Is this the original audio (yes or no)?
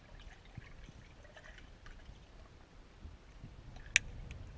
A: yes